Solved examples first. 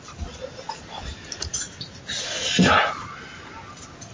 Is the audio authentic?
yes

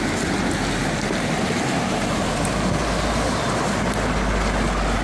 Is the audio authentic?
yes